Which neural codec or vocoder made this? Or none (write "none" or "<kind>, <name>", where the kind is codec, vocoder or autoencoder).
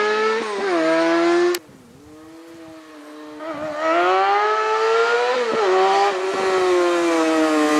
none